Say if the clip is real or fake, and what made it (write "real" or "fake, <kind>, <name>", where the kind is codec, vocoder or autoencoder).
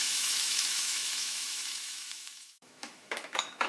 fake, autoencoder, DAC-VAE